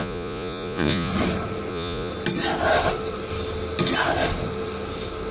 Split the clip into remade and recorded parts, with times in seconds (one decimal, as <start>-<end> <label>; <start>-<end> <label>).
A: 0.0-1.1 remade; 1.1-1.7 recorded; 1.7-2.1 remade; 2.1-5.3 recorded